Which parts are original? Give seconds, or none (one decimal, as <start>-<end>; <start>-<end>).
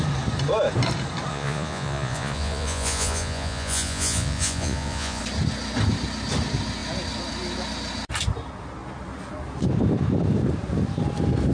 0.0-1.3; 5.2-11.5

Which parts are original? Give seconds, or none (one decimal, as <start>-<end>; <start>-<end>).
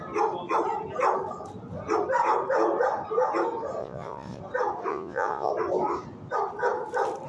0.0-3.8; 4.4-4.9; 5.5-7.3